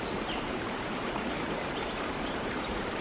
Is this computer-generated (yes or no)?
yes